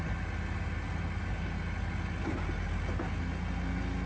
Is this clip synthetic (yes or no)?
no